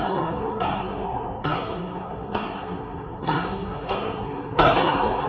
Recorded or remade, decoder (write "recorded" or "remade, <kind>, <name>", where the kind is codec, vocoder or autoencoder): remade, codec, SNAC